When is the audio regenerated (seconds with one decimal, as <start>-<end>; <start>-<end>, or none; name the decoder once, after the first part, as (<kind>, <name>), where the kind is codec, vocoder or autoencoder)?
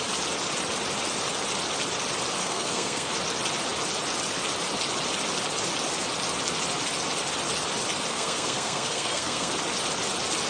2.4-3.1 (codec, SNAC); 8.1-9.5